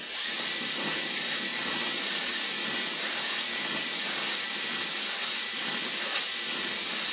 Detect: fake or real fake